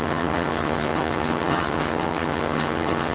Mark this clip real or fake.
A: fake